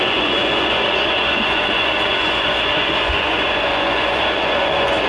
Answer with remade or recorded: remade